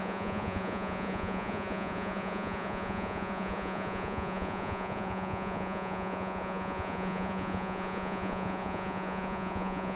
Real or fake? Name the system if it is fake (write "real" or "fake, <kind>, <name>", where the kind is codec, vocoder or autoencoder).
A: fake, vocoder, Vocos